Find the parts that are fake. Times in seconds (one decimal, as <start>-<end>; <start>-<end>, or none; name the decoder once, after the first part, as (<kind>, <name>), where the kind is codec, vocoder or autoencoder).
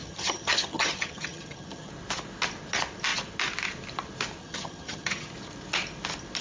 0.0-1.9 (vocoder, HiFi-GAN); 4.4-5.3